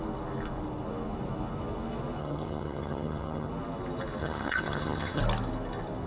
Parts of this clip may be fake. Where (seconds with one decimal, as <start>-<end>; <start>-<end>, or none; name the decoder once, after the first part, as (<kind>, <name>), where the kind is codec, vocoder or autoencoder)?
2.2-3.5 (vocoder, HiFi-GAN); 4.2-5.2